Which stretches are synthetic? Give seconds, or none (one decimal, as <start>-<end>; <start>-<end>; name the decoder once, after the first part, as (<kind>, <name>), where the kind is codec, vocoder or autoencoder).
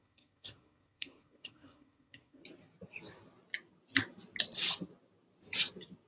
0.0-2.4 (codec, SNAC)